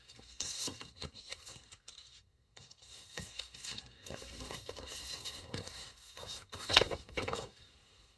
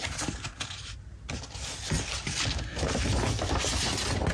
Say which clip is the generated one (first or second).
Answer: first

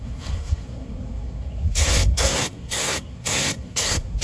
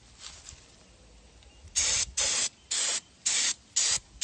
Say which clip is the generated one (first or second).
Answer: first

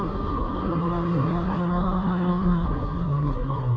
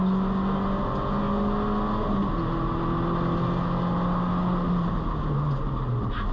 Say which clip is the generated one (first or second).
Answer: first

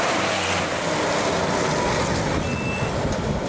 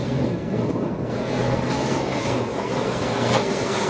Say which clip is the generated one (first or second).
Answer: second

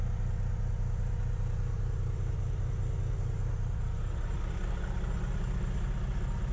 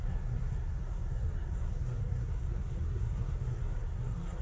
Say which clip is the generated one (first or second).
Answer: second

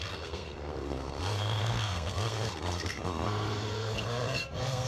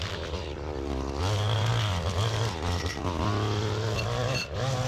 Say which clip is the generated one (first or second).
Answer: first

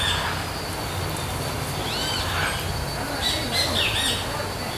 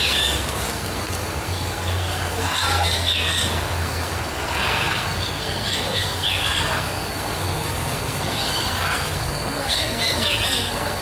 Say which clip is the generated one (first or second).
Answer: second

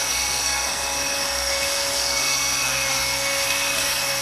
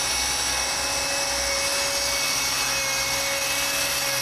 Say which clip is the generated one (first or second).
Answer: first